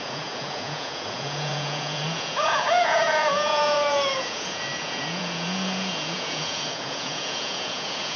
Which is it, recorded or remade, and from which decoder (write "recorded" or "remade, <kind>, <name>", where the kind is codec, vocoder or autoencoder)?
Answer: remade, vocoder, Vocos